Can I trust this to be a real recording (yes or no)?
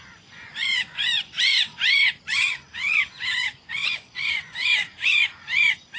no